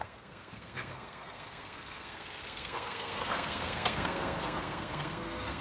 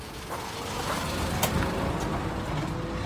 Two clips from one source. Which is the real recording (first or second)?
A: second